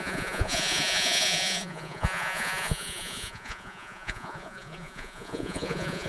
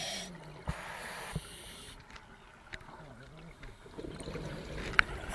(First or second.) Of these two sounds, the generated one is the first